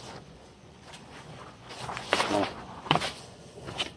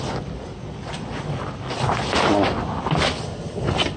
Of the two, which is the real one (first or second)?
second